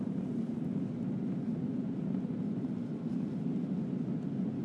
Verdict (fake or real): real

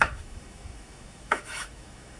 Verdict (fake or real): fake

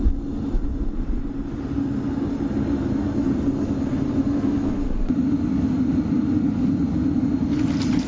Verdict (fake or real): real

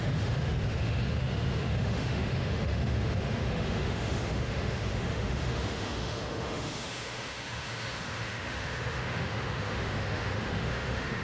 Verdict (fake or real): fake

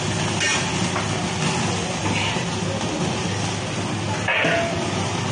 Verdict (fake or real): real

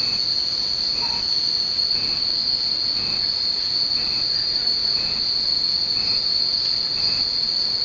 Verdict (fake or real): real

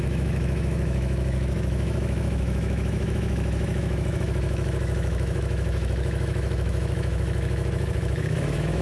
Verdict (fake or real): fake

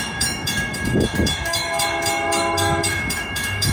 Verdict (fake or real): fake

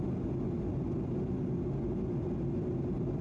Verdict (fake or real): real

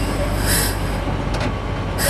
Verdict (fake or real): real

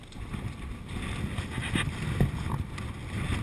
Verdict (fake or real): real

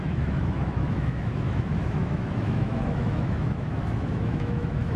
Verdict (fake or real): fake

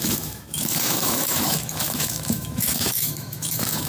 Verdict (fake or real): fake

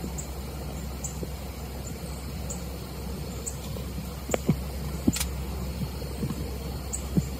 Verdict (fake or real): real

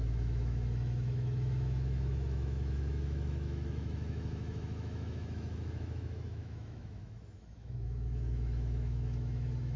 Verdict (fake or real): fake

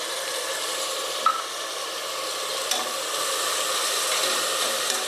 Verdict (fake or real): real